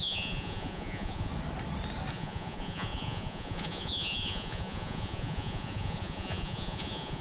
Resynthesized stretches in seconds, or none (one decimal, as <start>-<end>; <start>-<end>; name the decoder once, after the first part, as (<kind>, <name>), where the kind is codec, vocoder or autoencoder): 0.0-1.3 (vocoder, Vocos); 2.1-7.2